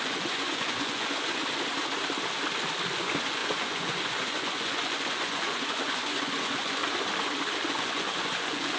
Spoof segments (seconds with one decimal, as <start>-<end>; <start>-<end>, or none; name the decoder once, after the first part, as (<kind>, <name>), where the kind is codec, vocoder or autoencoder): 0.0-1.4 (vocoder, Vocos); 2.9-6.8; 7.7-8.8